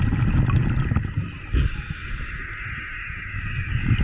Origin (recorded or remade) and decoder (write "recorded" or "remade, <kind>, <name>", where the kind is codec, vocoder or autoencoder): recorded